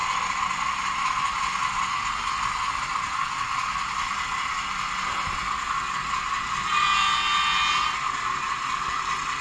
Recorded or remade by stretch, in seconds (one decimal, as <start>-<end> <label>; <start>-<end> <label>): 0.0-1.9 recorded; 1.9-2.4 remade; 2.4-9.4 recorded